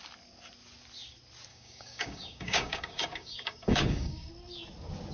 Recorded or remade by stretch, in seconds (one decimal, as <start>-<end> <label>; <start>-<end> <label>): 0.0-1.5 recorded; 1.5-4.3 remade; 4.3-5.1 recorded